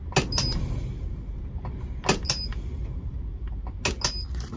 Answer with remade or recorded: recorded